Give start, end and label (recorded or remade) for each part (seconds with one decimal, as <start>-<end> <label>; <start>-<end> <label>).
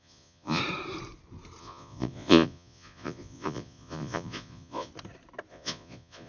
0.0-0.6 remade; 0.6-1.6 recorded; 1.6-4.9 remade; 4.9-5.5 recorded; 5.5-6.3 remade